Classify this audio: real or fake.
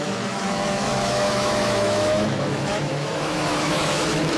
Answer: fake